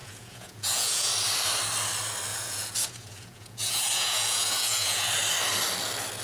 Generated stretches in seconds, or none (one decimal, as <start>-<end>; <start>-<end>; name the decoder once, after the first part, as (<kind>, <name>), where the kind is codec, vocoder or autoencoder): 0.0-1.1 (vocoder, Vocos); 2.3-5.1